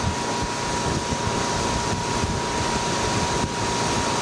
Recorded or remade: recorded